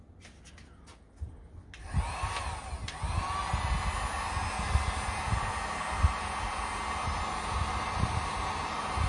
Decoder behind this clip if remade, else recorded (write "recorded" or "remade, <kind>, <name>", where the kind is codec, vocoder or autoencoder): recorded